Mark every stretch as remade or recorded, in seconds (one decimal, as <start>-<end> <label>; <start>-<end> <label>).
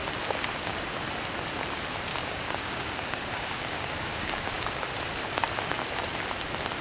0.0-2.1 recorded; 2.1-4.9 remade; 4.9-6.8 recorded